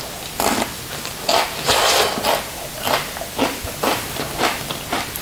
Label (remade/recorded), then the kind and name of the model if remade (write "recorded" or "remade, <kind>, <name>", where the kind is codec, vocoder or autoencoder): recorded